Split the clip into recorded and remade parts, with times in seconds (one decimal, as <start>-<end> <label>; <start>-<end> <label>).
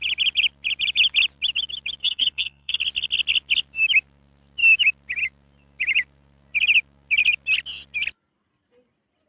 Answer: 0.0-2.0 recorded; 2.0-2.8 remade; 2.8-9.3 recorded